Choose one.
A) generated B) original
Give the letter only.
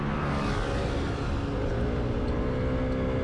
B